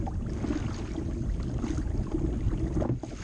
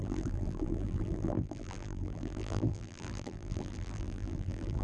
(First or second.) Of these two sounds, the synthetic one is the second